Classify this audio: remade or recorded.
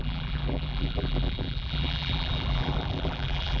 remade